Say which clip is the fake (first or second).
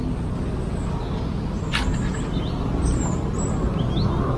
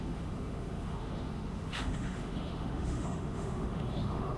second